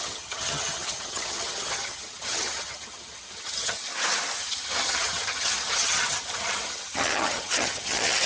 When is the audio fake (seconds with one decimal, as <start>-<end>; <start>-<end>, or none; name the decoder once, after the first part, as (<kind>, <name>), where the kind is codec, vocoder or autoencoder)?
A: 0.0-3.9 (vocoder, HiFi-GAN); 4.4-8.3